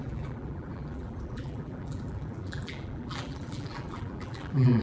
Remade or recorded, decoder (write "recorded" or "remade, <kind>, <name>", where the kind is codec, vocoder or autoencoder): remade, vocoder, BigVGAN v2